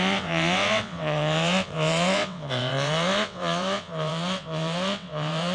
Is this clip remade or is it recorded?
remade